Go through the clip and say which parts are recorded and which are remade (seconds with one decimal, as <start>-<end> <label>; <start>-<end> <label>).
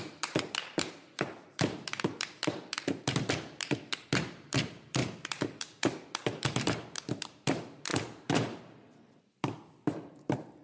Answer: 0.0-10.6 remade